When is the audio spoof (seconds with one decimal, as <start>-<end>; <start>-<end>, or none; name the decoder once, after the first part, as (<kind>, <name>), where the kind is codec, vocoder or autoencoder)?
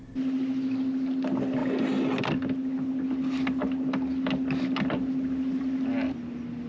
none